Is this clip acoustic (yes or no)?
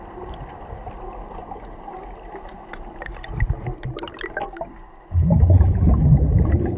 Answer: yes